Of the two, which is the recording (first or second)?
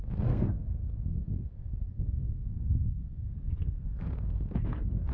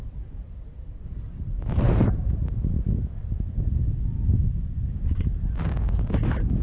second